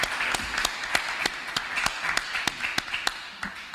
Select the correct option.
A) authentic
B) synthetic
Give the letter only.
A